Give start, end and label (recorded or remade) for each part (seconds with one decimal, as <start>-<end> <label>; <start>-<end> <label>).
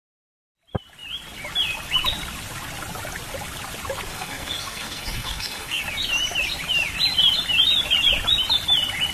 0.0-4.1 recorded; 4.1-5.8 remade; 5.8-9.1 recorded